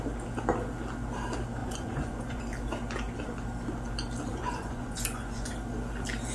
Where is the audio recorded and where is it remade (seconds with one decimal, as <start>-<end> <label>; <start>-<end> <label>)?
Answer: 0.0-1.6 recorded; 1.6-2.4 remade; 2.4-4.3 recorded; 4.3-5.5 remade; 5.5-6.3 recorded